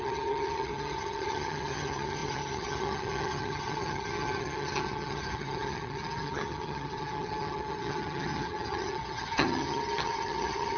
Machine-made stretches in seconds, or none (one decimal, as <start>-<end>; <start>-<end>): 0.0-10.8